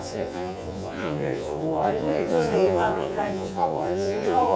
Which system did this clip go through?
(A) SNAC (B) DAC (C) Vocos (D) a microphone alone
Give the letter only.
C